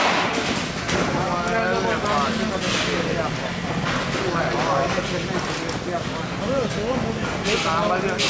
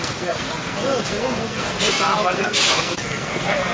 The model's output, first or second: second